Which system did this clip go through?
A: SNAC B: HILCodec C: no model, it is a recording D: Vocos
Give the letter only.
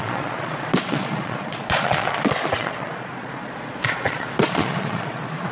D